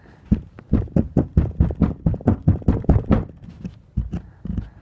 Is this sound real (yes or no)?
yes